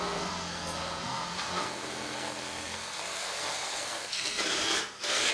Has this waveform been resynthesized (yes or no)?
yes